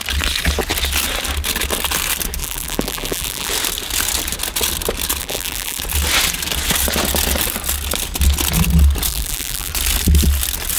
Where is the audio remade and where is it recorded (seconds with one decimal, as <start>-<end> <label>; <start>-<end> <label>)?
0.0-2.4 recorded; 2.4-3.5 remade; 3.5-5.2 recorded; 5.2-5.8 remade; 5.8-9.1 recorded; 9.1-9.7 remade; 9.7-10.8 recorded